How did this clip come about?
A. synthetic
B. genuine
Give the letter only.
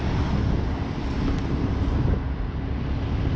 B